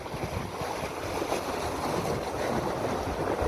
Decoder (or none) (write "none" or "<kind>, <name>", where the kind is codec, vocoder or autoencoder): none